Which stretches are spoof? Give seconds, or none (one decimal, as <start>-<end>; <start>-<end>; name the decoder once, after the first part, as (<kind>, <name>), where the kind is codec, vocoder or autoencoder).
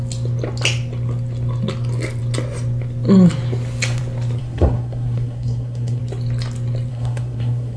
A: 4.4-6.0 (codec, SNAC); 6.9-7.8